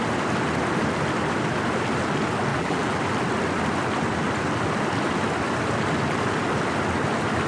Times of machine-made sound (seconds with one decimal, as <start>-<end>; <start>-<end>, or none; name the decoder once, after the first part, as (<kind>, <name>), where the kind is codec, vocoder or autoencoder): 2.5-3.0 (vocoder, BigVGAN v2)